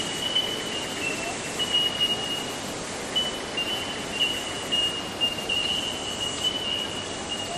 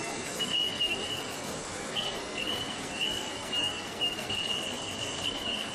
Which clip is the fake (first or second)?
second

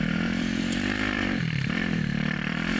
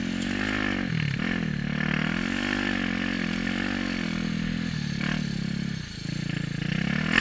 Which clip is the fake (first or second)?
first